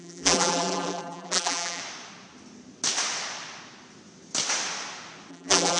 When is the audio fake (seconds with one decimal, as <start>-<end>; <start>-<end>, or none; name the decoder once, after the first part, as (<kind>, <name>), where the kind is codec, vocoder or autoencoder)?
0.0-1.8 (vocoder, BigVGAN v2); 5.3-5.8